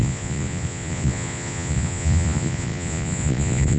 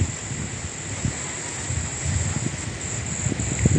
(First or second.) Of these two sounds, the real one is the second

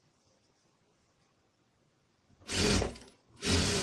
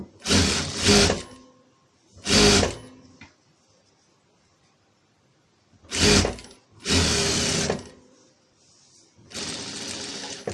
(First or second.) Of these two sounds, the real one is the second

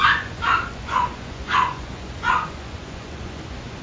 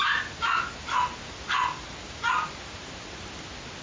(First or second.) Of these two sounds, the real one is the second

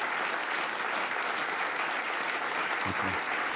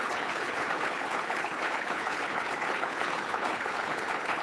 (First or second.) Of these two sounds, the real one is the first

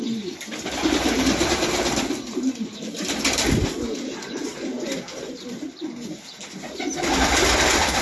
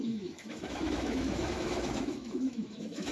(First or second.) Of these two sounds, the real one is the first